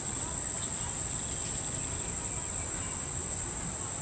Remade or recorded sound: recorded